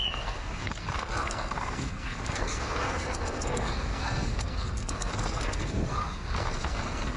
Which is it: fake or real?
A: fake